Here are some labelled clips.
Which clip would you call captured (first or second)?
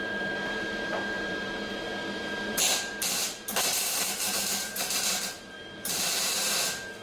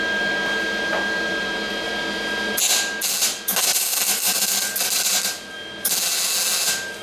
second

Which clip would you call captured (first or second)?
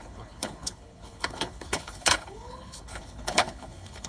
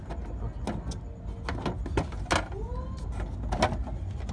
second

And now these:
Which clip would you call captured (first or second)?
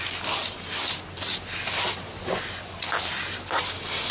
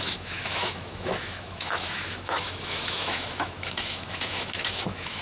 first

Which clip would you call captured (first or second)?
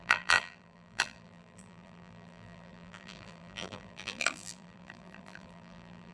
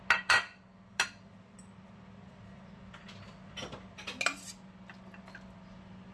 second